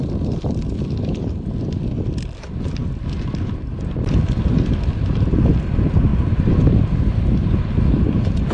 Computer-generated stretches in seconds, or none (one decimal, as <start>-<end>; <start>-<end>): 0.0-2.8; 3.3-6.1; 7.6-8.5